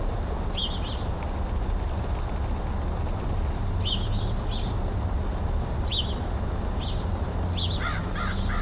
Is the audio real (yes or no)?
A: yes